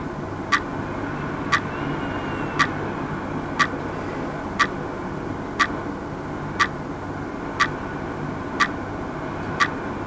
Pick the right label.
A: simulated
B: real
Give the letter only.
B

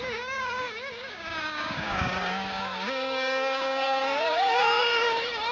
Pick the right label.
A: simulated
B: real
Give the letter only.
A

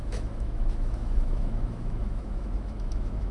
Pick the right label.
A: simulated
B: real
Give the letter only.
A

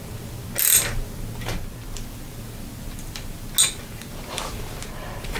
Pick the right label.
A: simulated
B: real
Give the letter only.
B